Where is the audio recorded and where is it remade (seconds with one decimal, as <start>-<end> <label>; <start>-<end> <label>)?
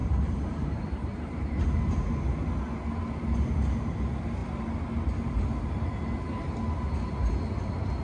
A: 0.0-1.4 remade; 1.4-8.0 recorded